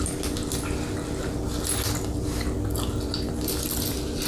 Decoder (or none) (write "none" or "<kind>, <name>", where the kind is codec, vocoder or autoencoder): none